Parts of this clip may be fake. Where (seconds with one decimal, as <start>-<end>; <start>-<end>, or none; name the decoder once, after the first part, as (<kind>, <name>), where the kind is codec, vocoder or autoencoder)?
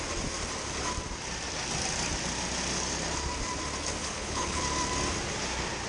4.0-4.6 (codec, HILCodec)